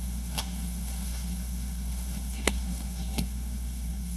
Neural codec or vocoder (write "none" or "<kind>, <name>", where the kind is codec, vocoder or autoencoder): codec, SNAC